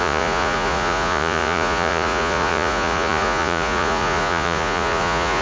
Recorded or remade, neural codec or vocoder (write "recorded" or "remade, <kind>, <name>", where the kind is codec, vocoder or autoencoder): remade, vocoder, Vocos